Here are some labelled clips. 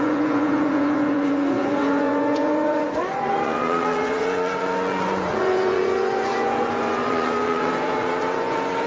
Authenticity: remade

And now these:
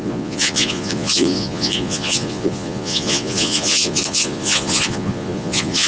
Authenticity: remade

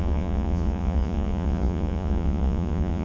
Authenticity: remade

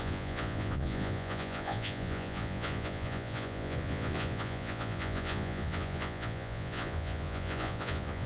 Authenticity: remade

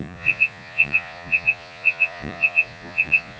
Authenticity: remade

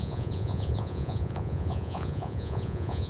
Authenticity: remade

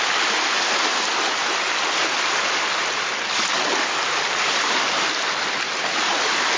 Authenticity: recorded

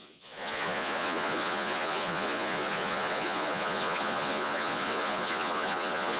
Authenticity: remade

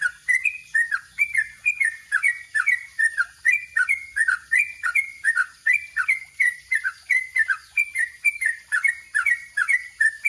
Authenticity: remade